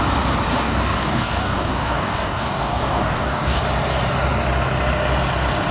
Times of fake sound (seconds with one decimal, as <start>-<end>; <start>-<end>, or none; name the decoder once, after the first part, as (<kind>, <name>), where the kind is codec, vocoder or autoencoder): 0.5-3.6 (codec, DAC)